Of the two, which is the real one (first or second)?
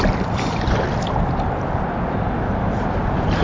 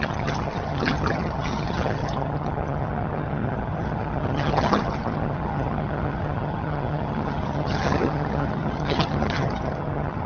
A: first